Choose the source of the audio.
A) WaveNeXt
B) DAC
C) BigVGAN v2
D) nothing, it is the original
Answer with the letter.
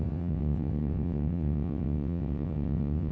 A